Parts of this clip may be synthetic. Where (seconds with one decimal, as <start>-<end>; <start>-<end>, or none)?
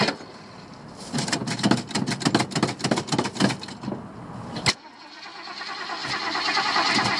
none